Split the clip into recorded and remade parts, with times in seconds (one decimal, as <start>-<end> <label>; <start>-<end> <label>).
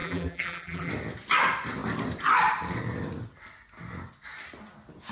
0.0-0.9 remade; 0.9-5.1 recorded